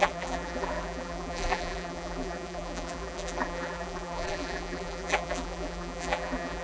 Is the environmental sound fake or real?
fake